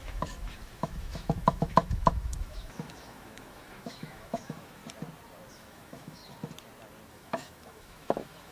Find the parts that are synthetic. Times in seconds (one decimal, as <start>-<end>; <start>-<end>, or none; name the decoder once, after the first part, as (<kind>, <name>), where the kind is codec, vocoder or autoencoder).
0.0-4.8 (autoencoder, DAC-VAE); 5.5-6.2; 7.1-8.5